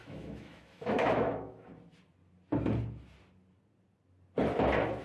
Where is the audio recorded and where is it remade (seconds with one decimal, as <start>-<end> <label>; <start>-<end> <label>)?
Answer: 0.0-1.7 remade; 1.7-5.0 recorded